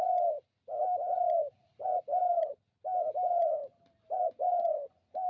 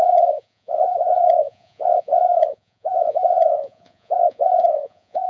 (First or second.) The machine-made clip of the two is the second